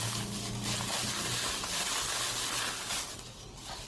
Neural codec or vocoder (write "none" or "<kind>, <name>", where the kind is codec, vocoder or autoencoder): none